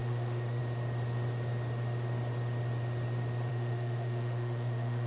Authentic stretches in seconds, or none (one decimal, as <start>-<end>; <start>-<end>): 0.6-3.5

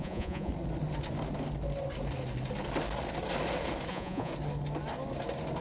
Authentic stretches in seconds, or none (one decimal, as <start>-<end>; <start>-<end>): 0.5-3.9; 4.3-5.6

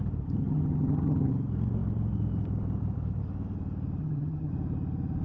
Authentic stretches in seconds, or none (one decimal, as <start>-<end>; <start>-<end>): 0.0-0.4; 1.3-4.0; 4.5-5.2

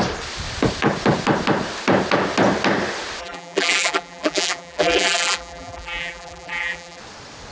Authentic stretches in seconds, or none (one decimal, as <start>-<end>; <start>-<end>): 0.0-3.2; 7.0-7.5

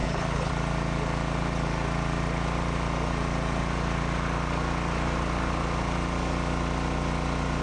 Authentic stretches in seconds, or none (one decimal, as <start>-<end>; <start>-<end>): 0.5-7.6

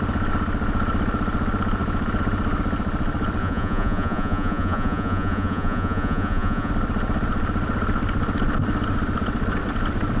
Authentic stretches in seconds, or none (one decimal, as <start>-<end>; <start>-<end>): 0.0-3.4; 6.7-10.2

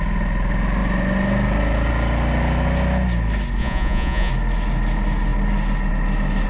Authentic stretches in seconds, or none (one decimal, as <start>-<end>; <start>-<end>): 0.0-3.6; 4.3-6.5

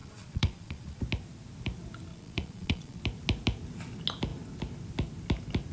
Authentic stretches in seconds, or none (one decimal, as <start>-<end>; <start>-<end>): 1.0-2.1; 3.0-5.7